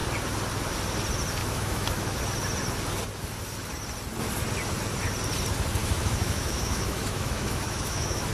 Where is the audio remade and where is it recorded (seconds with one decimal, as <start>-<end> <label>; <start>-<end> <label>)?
0.0-1.4 recorded; 1.4-2.2 remade; 2.2-5.8 recorded; 5.8-8.3 remade